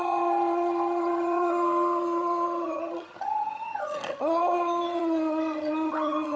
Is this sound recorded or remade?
remade